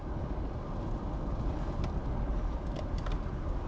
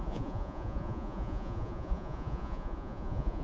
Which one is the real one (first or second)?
first